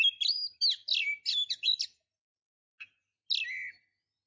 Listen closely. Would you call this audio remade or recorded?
recorded